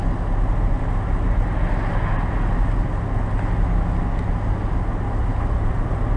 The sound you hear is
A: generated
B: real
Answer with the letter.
B